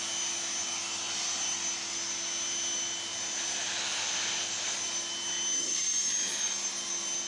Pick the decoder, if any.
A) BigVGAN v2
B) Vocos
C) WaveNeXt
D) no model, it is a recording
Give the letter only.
D